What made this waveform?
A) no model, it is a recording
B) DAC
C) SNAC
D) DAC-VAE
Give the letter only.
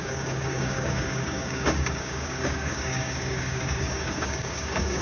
B